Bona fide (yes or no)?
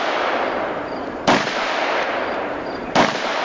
no